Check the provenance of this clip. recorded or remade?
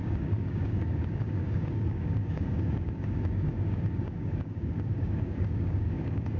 remade